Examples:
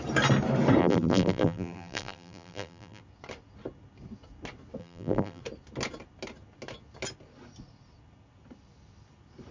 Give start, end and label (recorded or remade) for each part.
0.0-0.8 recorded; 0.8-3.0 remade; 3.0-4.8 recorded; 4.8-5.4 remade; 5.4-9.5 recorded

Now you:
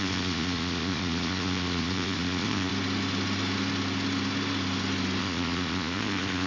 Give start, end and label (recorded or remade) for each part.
0.0-2.7 remade; 2.7-5.2 recorded; 5.2-6.5 remade

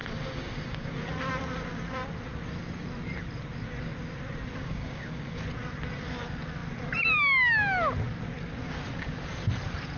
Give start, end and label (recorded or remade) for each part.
0.0-0.9 remade; 0.9-4.6 recorded; 4.6-5.4 remade; 5.4-10.0 recorded

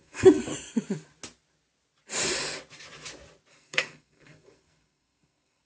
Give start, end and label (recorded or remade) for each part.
0.0-0.4 remade; 0.4-3.5 recorded; 3.5-5.7 remade

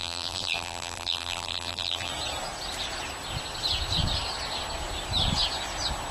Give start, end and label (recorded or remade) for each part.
0.0-2.1 remade; 2.1-6.1 recorded

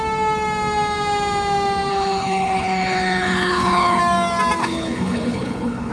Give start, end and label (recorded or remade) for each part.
0.0-1.9 recorded; 1.9-4.0 remade; 4.0-4.6 recorded; 4.6-5.9 remade

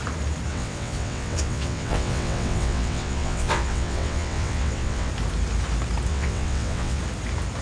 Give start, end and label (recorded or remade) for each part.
0.0-0.5 recorded; 0.5-5.1 remade; 5.1-6.1 recorded; 6.1-7.0 remade; 7.0-7.6 recorded